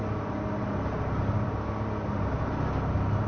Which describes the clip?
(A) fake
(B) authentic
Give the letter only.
B